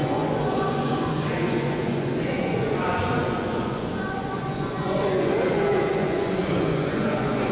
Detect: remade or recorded remade